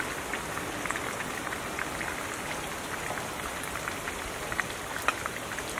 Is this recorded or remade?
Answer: recorded